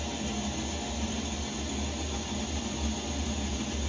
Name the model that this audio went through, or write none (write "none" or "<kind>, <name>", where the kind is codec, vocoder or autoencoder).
none